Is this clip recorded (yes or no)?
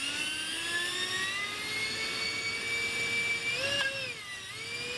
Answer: yes